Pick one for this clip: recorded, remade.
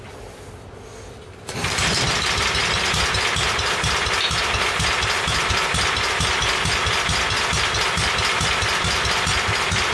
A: recorded